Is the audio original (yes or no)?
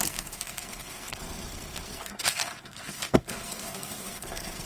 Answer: no